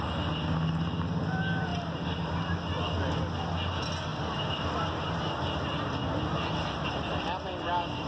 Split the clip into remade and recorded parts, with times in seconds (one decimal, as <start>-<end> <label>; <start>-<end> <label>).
0.0-1.7 recorded; 1.7-2.4 remade; 2.4-4.1 recorded; 4.1-5.1 remade; 5.1-6.0 recorded; 6.0-8.1 remade